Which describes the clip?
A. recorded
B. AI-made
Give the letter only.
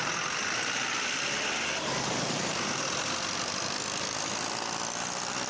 B